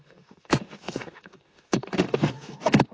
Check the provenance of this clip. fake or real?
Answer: fake